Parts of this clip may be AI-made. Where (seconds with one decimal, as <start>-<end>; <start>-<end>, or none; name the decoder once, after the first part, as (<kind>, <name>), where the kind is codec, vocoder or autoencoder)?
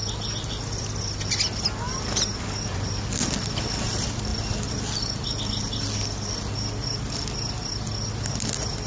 3.6-4.3 (vocoder, BigVGAN v2)